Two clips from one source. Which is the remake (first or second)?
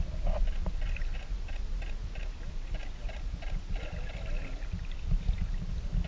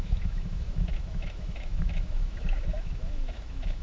second